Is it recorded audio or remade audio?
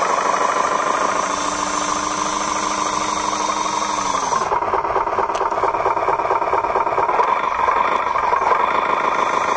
recorded